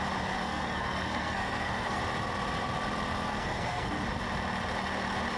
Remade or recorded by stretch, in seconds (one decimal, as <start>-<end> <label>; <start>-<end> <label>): 0.0-0.4 recorded; 0.4-2.0 remade; 2.0-3.3 recorded; 3.3-4.0 remade; 4.0-5.4 recorded